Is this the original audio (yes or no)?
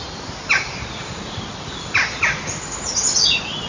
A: yes